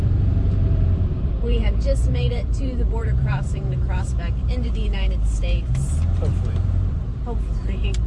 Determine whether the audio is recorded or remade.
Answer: remade